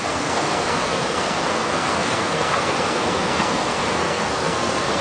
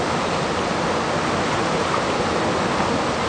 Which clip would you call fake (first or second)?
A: first